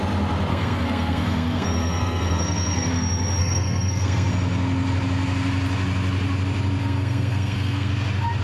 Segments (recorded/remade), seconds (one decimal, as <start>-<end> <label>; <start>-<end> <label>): 0.0-0.5 recorded; 0.5-2.9 remade; 2.9-3.4 recorded; 3.4-4.3 remade; 4.3-6.8 recorded; 6.8-7.9 remade; 7.9-8.4 recorded